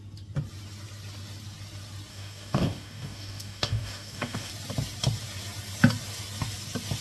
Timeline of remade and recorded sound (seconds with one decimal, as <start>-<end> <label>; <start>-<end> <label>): 0.0-2.1 recorded; 2.1-4.5 remade; 4.5-7.0 recorded